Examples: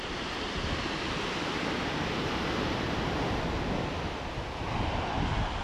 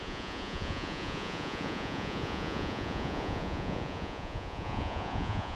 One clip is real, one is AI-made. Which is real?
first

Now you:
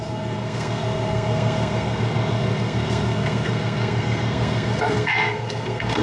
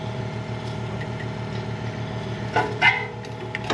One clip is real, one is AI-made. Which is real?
second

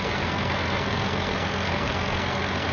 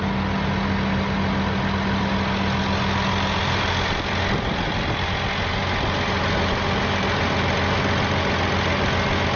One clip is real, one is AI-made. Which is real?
second